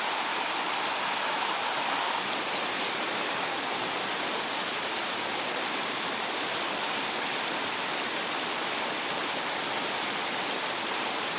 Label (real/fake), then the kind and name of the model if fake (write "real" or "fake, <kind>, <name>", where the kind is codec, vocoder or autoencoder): fake, vocoder, BigVGAN v2